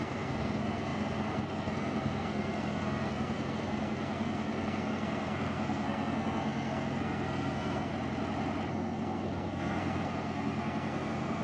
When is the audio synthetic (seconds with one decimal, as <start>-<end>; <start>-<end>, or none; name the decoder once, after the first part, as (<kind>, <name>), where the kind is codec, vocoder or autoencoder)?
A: 0.0-7.9 (codec, SNAC); 8.7-11.4